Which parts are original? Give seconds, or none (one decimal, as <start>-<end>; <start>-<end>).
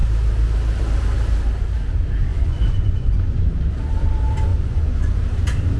0.0-2.3; 3.4-4.5; 5.2-5.8